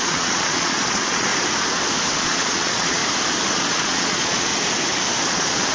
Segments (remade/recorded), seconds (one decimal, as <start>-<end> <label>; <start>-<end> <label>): 0.0-1.3 remade; 1.3-2.2 recorded; 2.2-3.0 remade; 3.0-3.5 recorded; 3.5-4.5 remade; 4.5-5.2 recorded; 5.2-5.7 remade